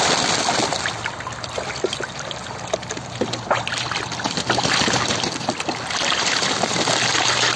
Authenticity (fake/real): real